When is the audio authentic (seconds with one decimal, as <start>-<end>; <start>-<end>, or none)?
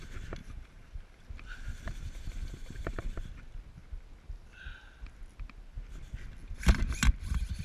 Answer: 0.0-0.4; 1.0-7.6